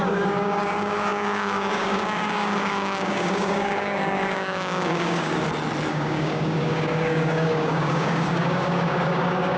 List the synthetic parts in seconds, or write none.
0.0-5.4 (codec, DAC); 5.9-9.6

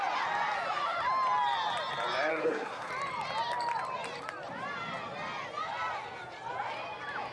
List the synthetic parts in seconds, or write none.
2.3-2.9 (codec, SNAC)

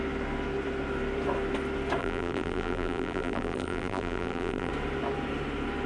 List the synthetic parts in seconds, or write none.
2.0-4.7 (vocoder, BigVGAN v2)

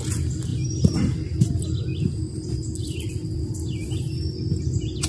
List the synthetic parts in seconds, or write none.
0.5-1.1 (vocoder, BigVGAN v2); 2.8-5.1

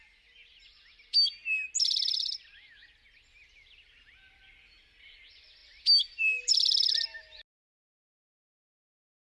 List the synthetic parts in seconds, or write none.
none